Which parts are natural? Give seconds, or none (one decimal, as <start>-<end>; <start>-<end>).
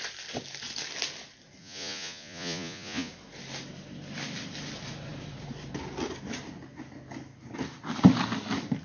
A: 0.0-1.6; 3.1-8.8